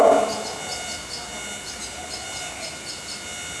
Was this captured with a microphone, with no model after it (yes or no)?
yes